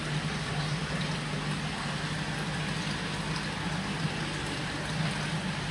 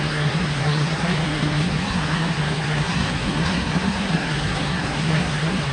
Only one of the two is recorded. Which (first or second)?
first